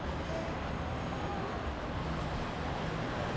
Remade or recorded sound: recorded